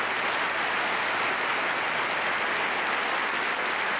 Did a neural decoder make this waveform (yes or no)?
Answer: no